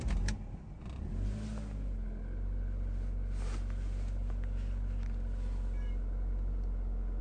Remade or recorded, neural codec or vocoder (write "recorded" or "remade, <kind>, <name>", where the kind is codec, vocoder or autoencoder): recorded